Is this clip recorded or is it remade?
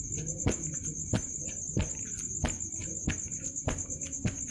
recorded